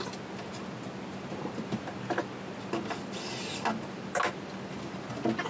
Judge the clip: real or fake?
real